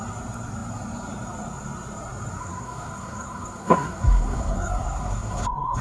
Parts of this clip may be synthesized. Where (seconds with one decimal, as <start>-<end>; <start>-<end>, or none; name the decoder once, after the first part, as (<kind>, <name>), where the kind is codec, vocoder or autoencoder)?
2.4-5.8 (codec, SNAC)